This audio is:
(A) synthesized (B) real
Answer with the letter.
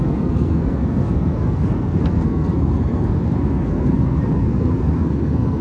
A